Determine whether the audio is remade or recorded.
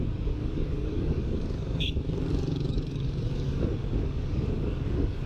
remade